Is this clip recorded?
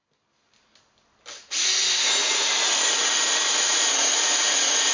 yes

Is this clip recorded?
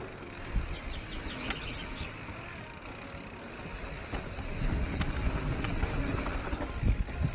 yes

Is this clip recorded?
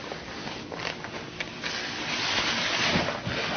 yes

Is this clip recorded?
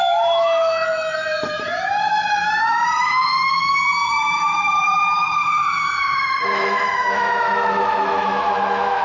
no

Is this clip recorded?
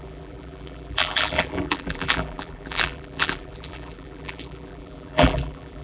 no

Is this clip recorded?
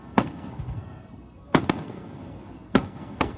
no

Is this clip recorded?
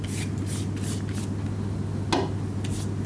yes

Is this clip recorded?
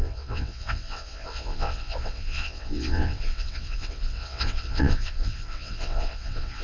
no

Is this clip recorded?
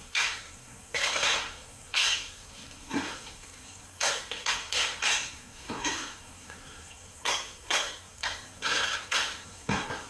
no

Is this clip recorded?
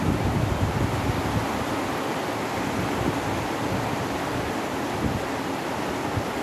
yes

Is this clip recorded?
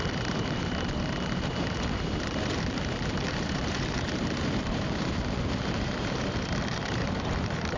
no